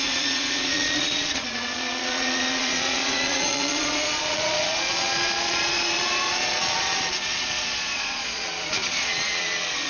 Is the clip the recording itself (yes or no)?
no